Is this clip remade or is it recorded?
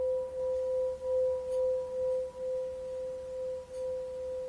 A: recorded